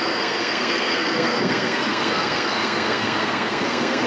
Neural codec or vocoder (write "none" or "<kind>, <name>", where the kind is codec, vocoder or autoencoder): codec, SNAC